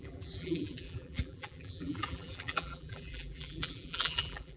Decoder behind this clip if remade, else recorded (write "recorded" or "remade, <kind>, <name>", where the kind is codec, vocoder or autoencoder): remade, vocoder, BigVGAN v2